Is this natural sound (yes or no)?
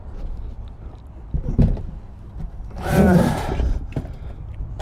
yes